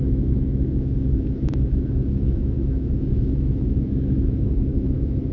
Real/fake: fake